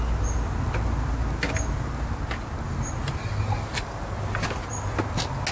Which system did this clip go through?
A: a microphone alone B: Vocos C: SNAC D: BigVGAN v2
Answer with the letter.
A